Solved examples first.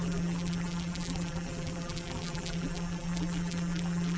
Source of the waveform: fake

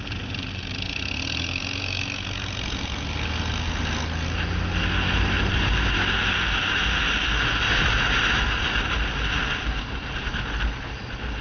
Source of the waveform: real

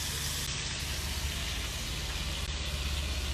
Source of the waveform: real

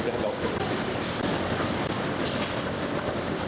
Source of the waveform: real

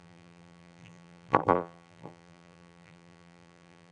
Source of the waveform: fake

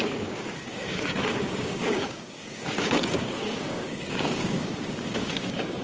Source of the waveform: fake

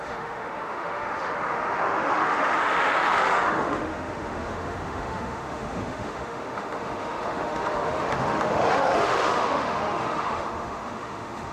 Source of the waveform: fake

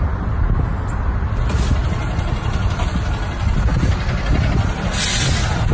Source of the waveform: real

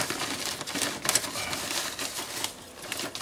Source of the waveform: real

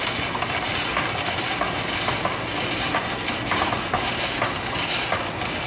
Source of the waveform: real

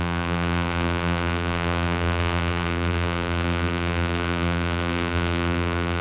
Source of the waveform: fake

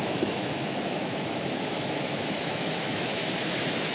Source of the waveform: fake